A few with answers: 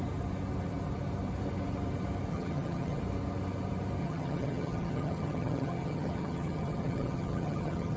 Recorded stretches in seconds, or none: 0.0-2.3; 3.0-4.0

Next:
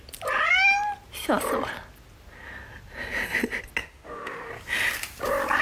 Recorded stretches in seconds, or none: 0.0-3.8; 4.5-5.6

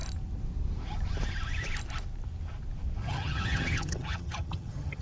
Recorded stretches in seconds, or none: 0.0-3.0

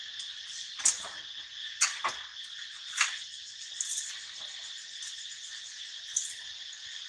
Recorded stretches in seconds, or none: 0.0-7.1

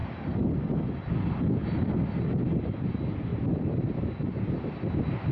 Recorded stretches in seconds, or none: 0.0-5.3

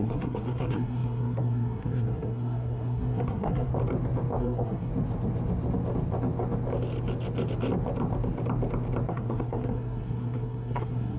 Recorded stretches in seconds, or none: 3.7-4.4; 4.9-9.1

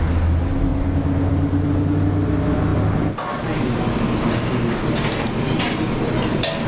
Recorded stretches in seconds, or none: 0.0-6.7

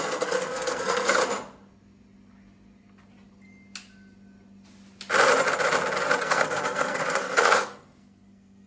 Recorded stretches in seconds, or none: 1.2-6.2